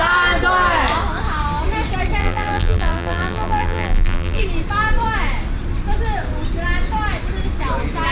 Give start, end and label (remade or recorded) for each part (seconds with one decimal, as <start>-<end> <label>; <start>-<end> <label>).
0.0-2.2 recorded; 2.2-4.4 remade; 4.4-8.1 recorded